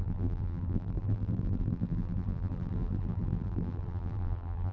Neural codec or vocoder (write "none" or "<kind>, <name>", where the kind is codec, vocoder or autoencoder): vocoder, BigVGAN v2